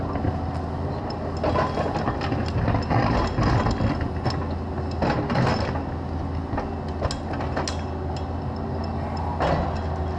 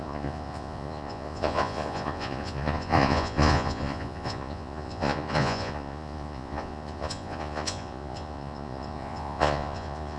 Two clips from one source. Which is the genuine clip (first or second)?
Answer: first